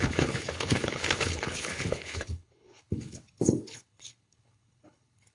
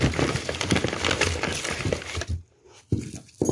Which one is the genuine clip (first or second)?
second